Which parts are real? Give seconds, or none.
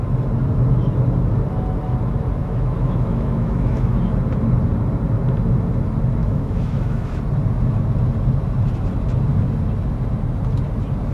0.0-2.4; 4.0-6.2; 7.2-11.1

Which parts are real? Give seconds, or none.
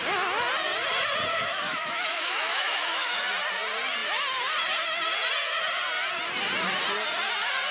0.0-1.3; 3.2-7.7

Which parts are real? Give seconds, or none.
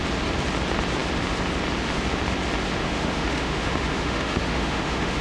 0.0-2.8